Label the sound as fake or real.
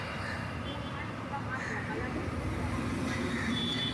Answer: real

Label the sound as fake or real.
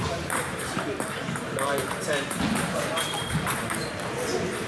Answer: fake